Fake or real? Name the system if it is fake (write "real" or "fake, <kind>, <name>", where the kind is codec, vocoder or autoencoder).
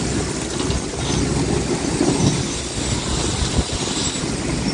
real